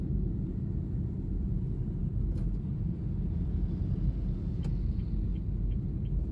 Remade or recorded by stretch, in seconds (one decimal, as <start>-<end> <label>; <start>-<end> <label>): 0.0-6.3 recorded